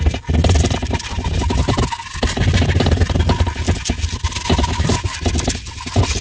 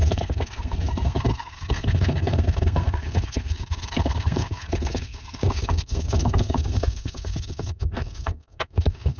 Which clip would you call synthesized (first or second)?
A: second